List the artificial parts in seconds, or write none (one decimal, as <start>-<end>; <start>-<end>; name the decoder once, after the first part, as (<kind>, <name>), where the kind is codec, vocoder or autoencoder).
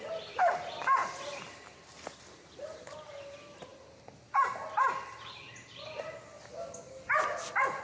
none